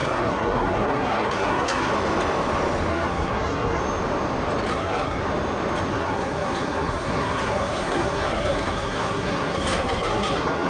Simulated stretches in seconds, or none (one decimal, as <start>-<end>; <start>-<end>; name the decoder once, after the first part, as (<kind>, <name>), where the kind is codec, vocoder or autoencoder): 0.0-1.9 (codec, SNAC); 2.9-3.8; 4.7-5.2; 5.9-10.7

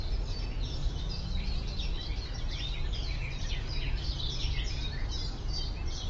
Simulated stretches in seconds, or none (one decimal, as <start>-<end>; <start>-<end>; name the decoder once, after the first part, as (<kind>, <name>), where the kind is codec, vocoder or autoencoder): 0.8-3.5 (vocoder, BigVGAN v2)

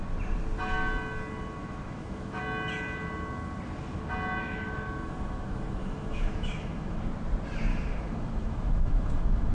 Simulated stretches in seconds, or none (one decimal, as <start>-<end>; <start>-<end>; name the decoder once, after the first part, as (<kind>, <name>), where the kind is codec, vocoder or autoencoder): 1.6-2.4 (autoencoder, DAC-VAE); 4.4-7.1; 7.7-9.5